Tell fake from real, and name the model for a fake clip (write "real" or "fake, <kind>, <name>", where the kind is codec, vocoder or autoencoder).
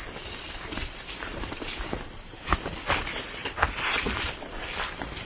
real